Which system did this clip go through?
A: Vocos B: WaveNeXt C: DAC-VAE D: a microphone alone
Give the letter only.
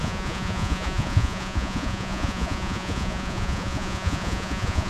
A